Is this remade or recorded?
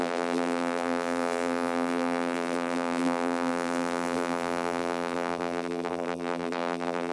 remade